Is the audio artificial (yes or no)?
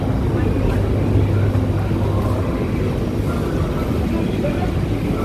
no